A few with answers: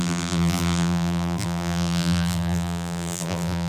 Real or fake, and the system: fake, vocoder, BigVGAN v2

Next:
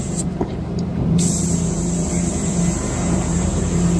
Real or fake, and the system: fake, vocoder, BigVGAN v2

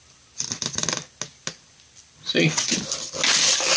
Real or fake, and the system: real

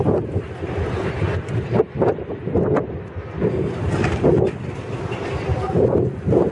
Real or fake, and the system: real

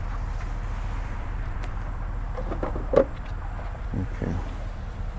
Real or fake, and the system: fake, vocoder, BigVGAN v2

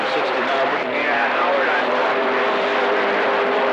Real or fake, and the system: fake, vocoder, BigVGAN v2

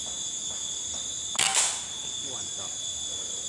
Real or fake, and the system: real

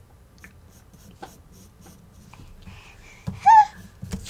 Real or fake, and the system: real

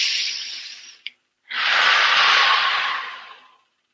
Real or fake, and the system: fake, vocoder, BigVGAN v2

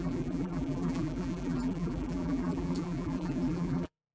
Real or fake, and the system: fake, vocoder, BigVGAN v2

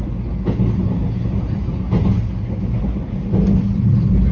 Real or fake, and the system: real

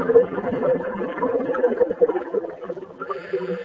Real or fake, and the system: fake, vocoder, BigVGAN v2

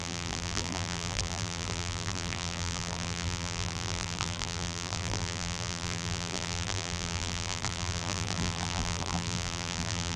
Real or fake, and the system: fake, vocoder, BigVGAN v2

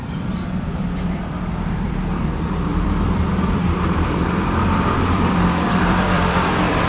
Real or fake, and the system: fake, vocoder, BigVGAN v2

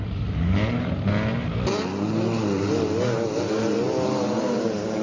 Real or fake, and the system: real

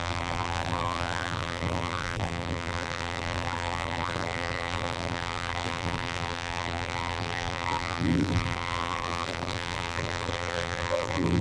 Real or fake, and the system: fake, vocoder, BigVGAN v2